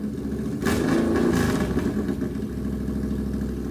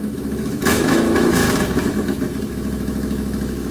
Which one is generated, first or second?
second